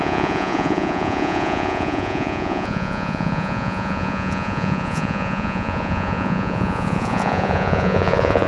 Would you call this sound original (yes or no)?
no